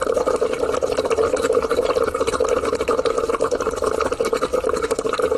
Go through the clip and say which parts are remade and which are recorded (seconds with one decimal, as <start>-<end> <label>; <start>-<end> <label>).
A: 0.0-3.2 remade; 3.2-5.4 recorded